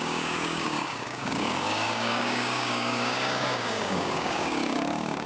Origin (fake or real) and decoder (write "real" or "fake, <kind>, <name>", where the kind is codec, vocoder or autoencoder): fake, codec, DAC